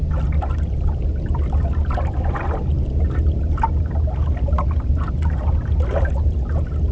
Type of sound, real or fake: real